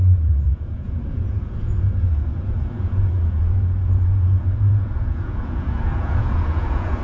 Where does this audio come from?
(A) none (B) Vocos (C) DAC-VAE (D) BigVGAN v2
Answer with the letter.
B